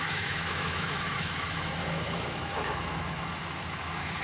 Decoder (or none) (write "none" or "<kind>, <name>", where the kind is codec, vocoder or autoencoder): autoencoder, DAC-VAE